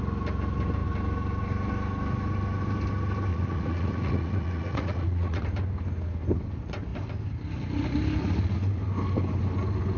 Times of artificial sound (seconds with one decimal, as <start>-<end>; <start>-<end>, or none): 3.3-5.4